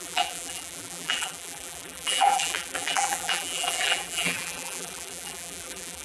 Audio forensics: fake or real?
fake